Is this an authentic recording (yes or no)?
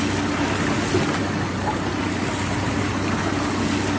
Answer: yes